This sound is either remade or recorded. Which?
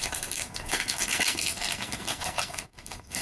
remade